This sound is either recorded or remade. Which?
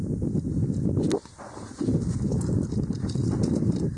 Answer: recorded